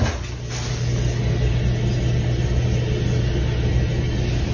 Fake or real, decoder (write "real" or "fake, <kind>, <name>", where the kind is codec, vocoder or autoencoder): real